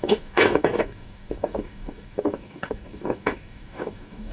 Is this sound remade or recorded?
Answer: remade